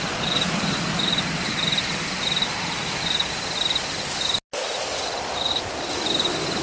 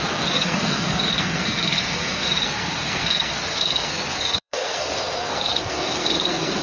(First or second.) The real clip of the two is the first